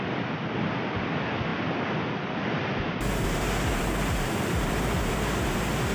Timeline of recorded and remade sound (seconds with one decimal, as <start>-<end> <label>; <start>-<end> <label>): 0.0-5.9 recorded